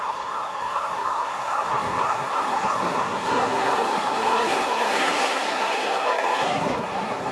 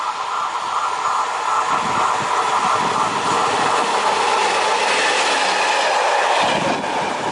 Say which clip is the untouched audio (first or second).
second